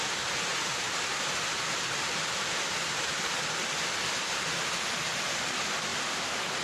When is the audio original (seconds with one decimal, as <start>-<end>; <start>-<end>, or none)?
0.0-6.6